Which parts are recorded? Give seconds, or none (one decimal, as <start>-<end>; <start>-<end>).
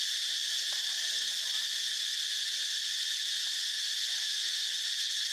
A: 0.0-4.2; 4.7-5.3